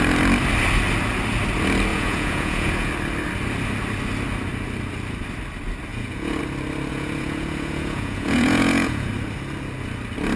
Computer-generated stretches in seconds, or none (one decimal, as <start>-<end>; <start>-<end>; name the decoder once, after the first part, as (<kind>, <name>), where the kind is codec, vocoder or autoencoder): 1.9-2.9 (vocoder, Vocos); 5.9-6.4; 6.9-9.1